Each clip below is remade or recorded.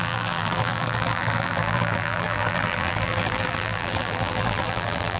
remade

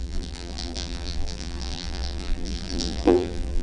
remade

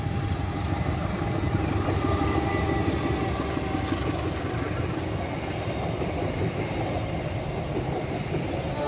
recorded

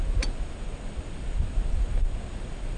recorded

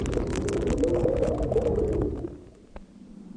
recorded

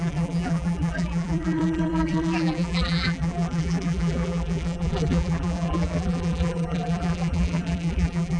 remade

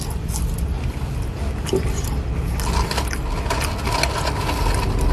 recorded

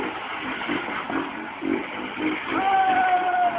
recorded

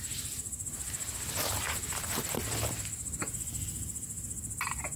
remade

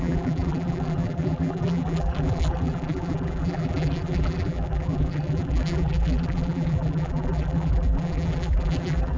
remade